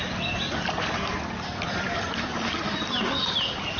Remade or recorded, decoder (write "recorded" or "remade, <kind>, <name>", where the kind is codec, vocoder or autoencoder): recorded